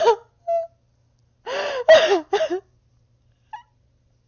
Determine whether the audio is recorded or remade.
recorded